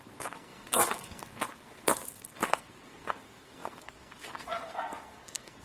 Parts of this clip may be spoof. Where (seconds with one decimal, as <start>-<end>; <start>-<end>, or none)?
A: 0.0-5.6